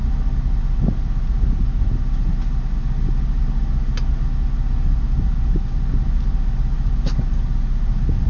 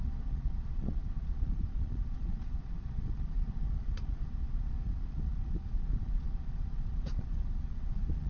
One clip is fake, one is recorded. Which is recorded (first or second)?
first